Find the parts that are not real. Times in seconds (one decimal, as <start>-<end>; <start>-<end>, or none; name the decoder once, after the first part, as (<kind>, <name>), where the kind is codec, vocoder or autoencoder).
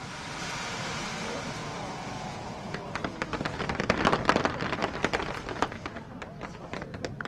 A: 1.6-2.8 (vocoder, Vocos)